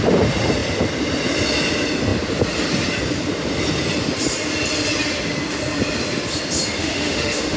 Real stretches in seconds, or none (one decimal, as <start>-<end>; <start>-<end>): 0.0-6.8